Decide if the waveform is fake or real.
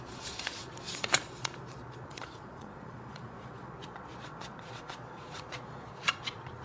fake